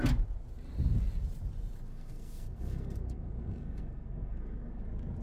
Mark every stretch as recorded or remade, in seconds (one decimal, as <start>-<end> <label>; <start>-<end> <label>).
0.0-1.9 recorded; 1.9-4.8 remade; 4.8-5.2 recorded

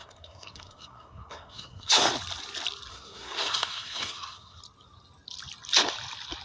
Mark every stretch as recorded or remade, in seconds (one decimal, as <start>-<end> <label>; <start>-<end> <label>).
0.0-2.1 remade; 2.1-2.9 recorded; 2.9-4.6 remade; 4.6-6.4 recorded